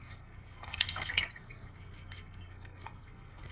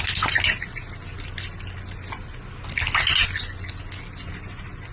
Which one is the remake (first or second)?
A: first